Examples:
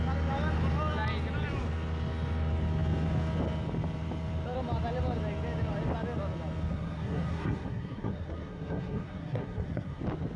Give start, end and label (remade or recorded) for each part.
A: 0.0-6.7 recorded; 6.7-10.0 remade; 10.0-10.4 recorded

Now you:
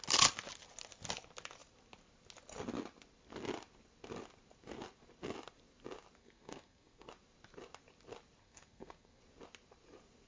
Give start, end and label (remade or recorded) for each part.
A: 0.0-6.2 recorded; 6.2-7.1 remade; 7.1-8.4 recorded; 8.4-9.2 remade; 9.2-10.3 recorded

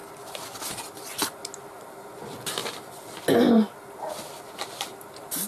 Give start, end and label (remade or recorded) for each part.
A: 0.0-5.5 recorded

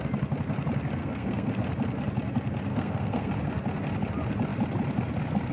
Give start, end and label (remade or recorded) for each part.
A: 0.0-1.0 recorded; 1.0-1.5 remade; 1.5-2.7 recorded; 2.7-3.3 remade; 3.3-5.5 recorded

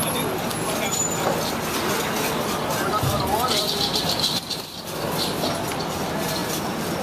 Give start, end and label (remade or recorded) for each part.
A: 0.0-7.0 recorded

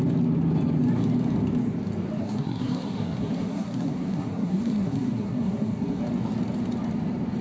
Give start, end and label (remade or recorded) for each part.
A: 0.0-2.2 recorded; 2.2-6.0 remade; 6.0-7.4 recorded

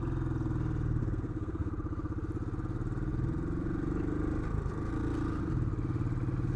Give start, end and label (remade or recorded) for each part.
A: 0.0-1.0 recorded; 1.0-1.7 remade; 1.7-6.6 recorded

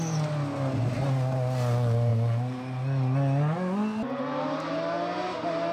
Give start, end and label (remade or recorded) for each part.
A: 0.0-5.7 recorded